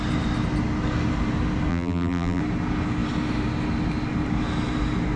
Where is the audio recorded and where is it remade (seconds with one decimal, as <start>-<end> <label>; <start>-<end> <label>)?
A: 0.0-1.7 recorded; 1.7-2.4 remade; 2.4-5.2 recorded